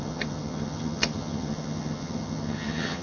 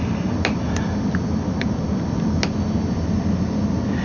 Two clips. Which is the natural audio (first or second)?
second